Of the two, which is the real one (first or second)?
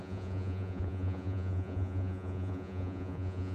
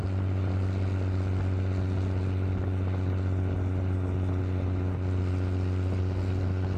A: second